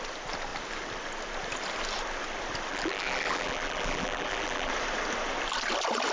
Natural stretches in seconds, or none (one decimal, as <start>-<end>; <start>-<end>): 0.0-2.7; 4.7-6.1